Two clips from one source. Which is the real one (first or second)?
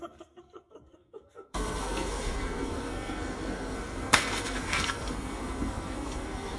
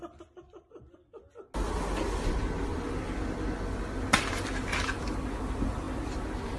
second